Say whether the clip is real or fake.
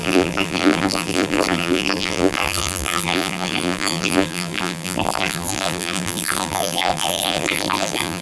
fake